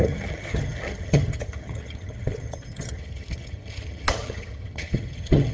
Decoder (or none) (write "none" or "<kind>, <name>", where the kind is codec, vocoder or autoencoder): vocoder, HiFi-GAN